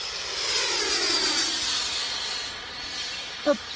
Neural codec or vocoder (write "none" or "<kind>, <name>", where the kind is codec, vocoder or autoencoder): none